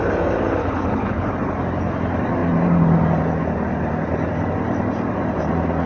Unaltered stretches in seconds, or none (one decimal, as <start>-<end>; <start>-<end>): 0.0-0.6; 1.3-5.9

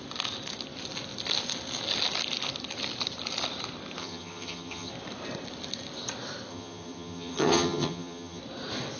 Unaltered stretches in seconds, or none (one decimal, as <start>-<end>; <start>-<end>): 0.0-4.0; 4.9-6.5; 8.4-9.0

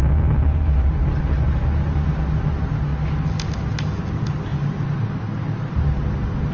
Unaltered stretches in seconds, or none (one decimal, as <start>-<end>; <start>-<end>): 0.0-6.5

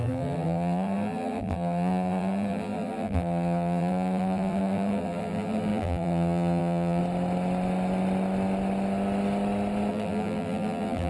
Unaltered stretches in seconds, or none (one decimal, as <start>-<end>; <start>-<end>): 7.0-9.9

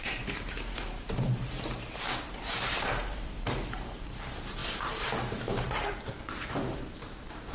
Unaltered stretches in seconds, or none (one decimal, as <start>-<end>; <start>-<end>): none